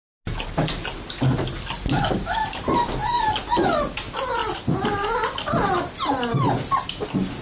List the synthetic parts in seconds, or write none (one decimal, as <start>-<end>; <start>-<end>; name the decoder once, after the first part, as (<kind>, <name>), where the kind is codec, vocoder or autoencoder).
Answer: none